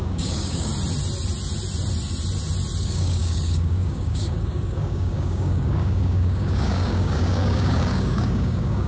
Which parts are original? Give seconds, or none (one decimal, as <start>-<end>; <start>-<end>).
0.7-2.8

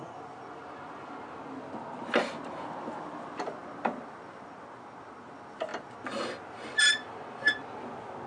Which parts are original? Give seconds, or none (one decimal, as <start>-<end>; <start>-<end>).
0.0-8.3

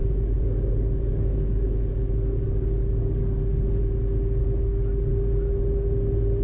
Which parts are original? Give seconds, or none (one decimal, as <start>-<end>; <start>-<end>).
3.8-4.4; 5.1-6.4

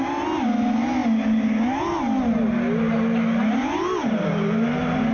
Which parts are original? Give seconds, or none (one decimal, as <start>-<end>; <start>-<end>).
0.0-5.1

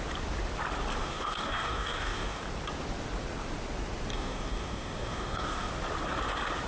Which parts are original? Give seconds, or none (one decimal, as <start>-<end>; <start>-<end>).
0.0-1.0; 2.4-4.1; 5.7-6.7